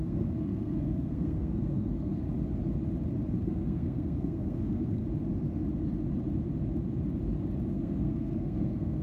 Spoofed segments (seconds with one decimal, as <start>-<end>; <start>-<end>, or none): 0.0-2.1; 3.4-5.0; 7.7-9.0